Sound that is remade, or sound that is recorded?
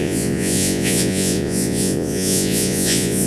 remade